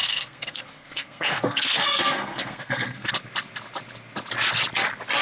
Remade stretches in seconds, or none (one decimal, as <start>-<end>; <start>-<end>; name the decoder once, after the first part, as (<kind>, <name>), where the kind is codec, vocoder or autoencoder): 0.0-3.1 (codec, SNAC)